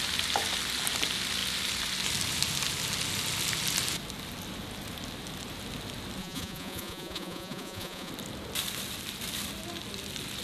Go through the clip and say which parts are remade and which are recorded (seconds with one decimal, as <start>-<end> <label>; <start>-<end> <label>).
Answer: 0.0-6.2 recorded; 6.2-8.1 remade; 8.1-10.4 recorded